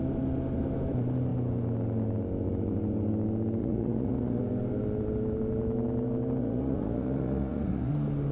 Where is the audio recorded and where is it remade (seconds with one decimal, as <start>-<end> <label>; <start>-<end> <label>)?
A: 0.0-3.6 recorded; 3.6-4.4 remade; 4.4-6.4 recorded; 6.4-7.9 remade; 7.9-8.3 recorded